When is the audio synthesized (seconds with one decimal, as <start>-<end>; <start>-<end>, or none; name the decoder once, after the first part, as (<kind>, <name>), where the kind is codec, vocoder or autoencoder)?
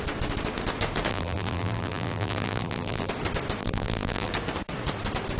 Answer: 1.1-3.1 (vocoder, BigVGAN v2); 3.6-4.3